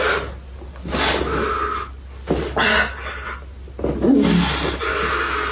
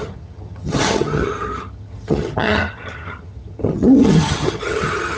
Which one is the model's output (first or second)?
second